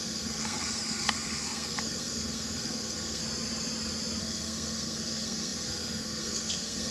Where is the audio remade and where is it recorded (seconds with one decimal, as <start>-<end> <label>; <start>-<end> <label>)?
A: 0.0-3.2 remade; 3.2-4.2 recorded; 4.2-6.9 remade